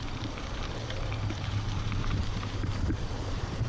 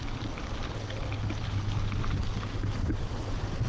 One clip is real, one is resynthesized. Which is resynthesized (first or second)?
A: first